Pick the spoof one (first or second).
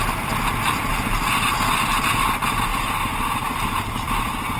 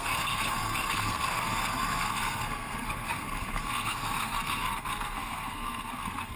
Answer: second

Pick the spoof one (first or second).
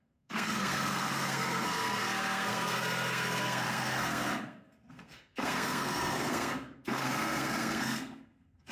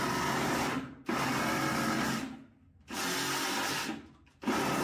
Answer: first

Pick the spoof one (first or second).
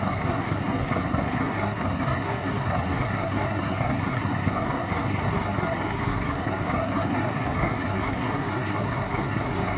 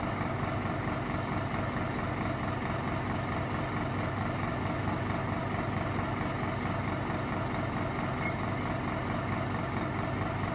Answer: first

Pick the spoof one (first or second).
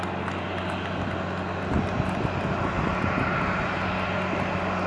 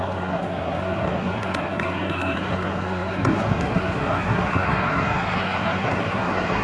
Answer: second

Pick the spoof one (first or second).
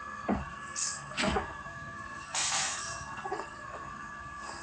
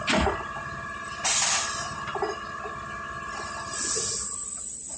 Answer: first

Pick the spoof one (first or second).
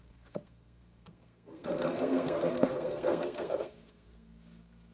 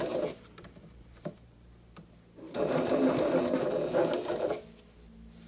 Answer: first